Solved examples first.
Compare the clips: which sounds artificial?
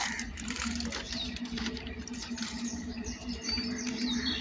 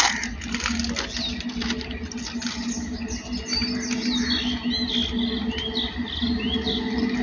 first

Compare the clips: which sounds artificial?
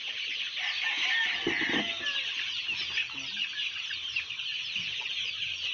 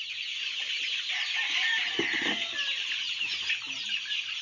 second